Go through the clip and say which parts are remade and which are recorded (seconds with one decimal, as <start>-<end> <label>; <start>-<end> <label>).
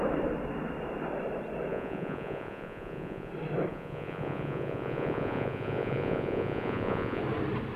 0.0-1.7 recorded; 1.7-3.3 remade; 3.3-3.7 recorded; 3.7-7.2 remade; 7.2-7.8 recorded